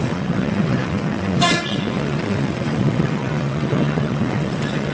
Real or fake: fake